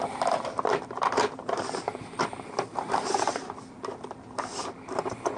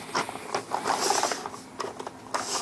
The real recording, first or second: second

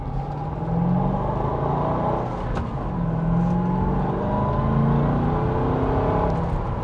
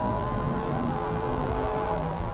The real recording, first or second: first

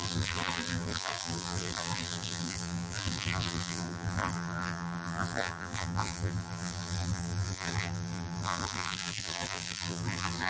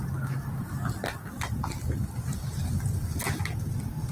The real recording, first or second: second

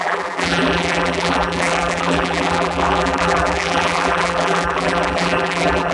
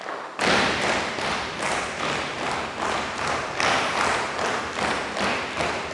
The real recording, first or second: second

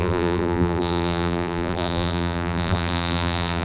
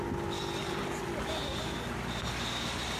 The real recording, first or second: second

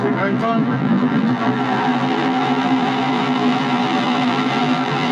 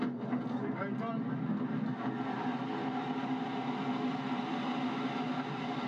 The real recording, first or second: second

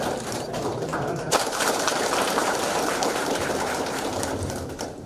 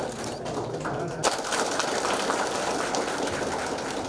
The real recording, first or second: second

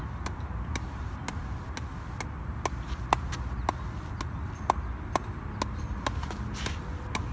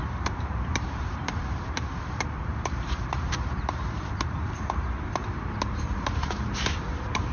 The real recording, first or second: first